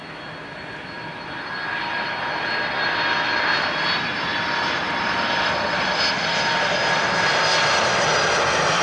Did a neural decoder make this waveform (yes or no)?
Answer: no